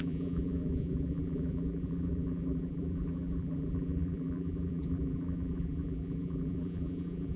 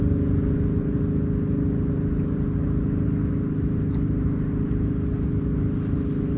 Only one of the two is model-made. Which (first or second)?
first